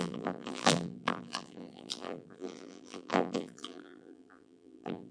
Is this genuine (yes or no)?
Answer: no